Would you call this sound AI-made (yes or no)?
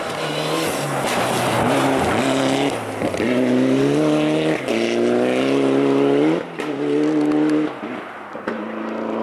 no